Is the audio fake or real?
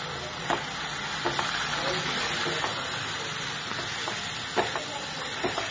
real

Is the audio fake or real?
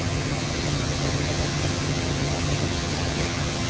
fake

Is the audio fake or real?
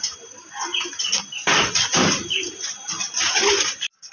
real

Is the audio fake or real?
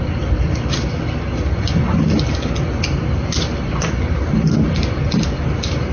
real